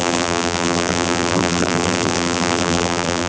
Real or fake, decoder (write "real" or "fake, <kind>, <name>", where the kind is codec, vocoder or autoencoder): fake, vocoder, BigVGAN v2